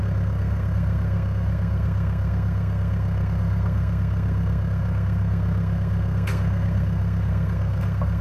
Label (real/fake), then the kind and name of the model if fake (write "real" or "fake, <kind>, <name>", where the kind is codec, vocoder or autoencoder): fake, codec, SNAC